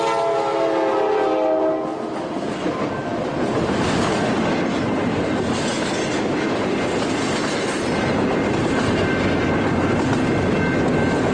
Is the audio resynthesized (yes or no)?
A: no